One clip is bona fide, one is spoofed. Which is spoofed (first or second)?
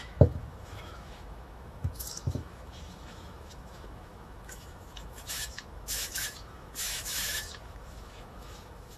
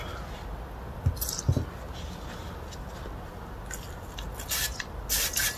first